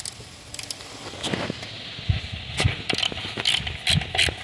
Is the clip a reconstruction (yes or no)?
no